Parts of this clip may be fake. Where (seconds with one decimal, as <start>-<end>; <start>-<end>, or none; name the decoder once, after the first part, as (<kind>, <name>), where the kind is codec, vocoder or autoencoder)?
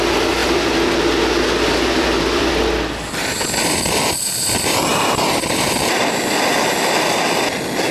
0.4-2.5 (vocoder, BigVGAN v2); 4.9-7.2